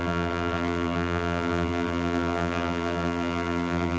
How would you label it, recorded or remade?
remade